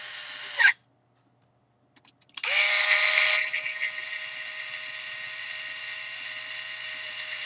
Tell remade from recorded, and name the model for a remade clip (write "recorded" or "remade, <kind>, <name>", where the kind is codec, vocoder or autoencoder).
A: recorded